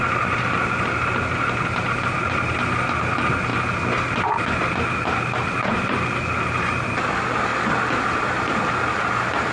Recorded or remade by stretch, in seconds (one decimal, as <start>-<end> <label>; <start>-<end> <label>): 0.0-3.5 remade; 3.5-6.2 recorded; 6.2-7.5 remade; 7.5-9.5 recorded